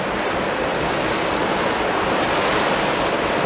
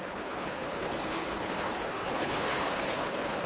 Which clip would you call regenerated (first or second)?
second